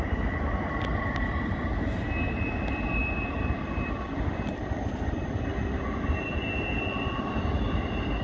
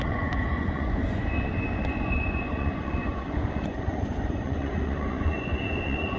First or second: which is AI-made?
second